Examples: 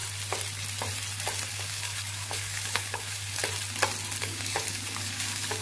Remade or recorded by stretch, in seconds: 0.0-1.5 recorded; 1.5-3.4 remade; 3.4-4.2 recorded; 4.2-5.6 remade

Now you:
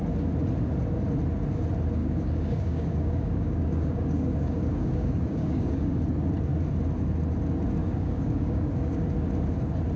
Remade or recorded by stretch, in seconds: 0.0-2.0 recorded; 2.0-6.0 remade; 6.0-7.8 recorded; 7.8-9.0 remade; 9.0-10.0 recorded

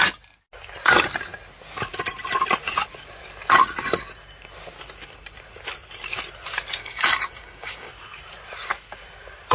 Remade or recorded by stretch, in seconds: 0.0-6.8 recorded; 6.8-7.9 remade; 7.9-9.5 recorded

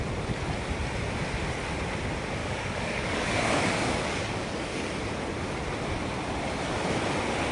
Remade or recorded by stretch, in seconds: 0.0-2.4 recorded; 2.4-4.8 remade; 4.8-7.5 recorded

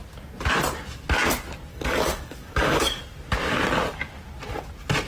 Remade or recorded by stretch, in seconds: 0.0-1.7 recorded; 1.7-3.0 remade; 3.0-5.1 recorded